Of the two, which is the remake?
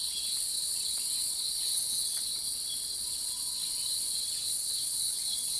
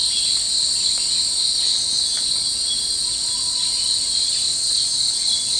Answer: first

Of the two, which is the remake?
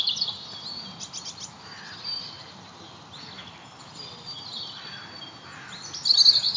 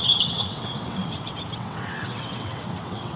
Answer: second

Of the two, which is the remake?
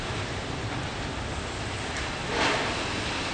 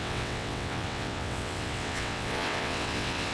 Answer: second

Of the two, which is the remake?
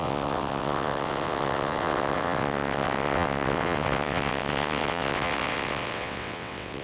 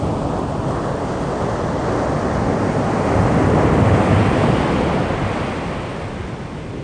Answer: first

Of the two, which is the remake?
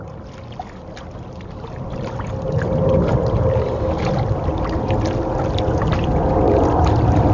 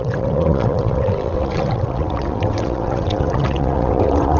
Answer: second